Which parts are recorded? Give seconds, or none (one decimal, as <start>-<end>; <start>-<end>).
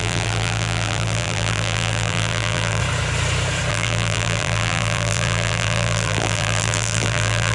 2.8-3.7